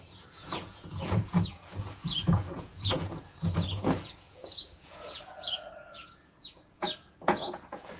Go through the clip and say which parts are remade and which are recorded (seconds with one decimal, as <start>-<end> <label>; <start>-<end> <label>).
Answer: 0.0-8.0 remade